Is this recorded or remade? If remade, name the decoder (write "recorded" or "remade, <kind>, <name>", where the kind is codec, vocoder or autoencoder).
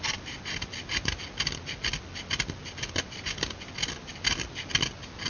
recorded